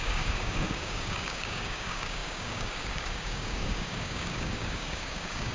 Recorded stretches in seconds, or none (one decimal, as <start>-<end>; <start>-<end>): none

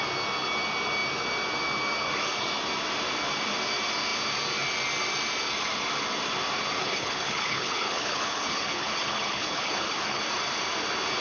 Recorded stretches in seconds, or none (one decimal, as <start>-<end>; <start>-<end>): 0.0-6.8; 10.2-11.2